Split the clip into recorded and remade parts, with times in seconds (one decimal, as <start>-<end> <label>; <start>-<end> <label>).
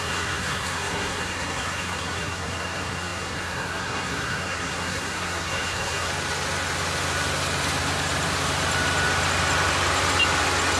0.0-6.1 remade; 6.1-10.8 recorded